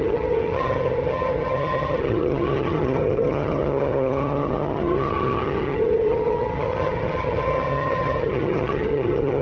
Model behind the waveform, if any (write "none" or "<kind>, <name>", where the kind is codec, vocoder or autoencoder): vocoder, HiFi-GAN